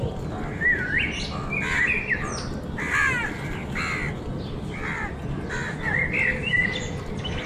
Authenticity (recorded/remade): recorded